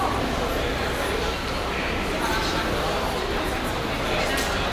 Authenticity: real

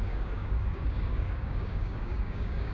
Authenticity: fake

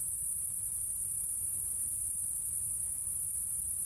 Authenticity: real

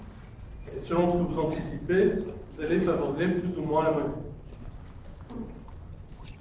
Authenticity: real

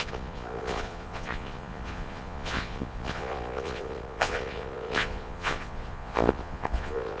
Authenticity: fake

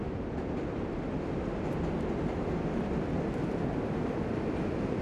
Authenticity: real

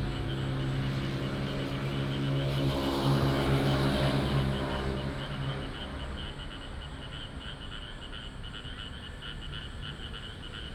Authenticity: real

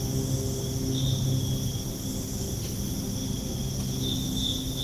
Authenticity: real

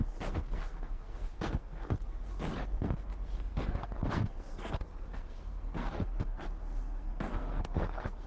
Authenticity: fake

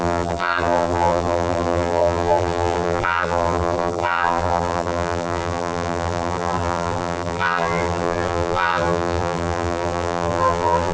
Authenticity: fake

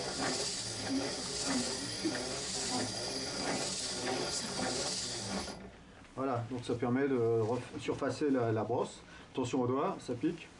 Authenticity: real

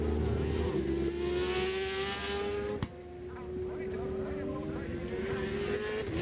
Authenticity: real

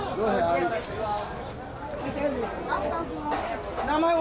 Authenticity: real